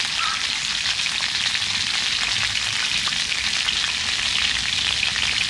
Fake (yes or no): no